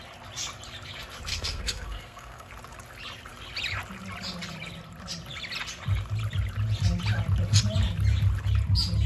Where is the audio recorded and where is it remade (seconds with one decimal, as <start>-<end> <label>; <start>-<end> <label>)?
0.0-1.3 recorded; 1.3-2.5 remade; 2.5-9.1 recorded